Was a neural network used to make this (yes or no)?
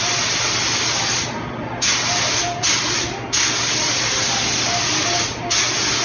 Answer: no